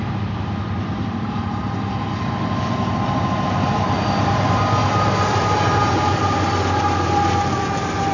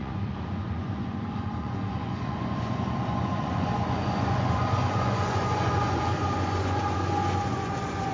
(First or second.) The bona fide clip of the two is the first